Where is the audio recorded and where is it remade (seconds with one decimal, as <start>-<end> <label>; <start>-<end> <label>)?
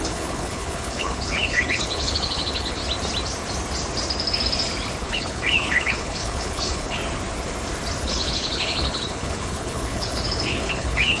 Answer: 0.0-2.8 remade; 2.8-5.0 recorded; 5.0-7.0 remade; 7.0-8.0 recorded; 8.0-11.2 remade